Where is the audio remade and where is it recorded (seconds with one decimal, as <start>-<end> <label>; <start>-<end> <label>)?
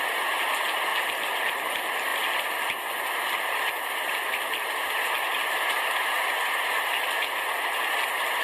0.0-8.4 recorded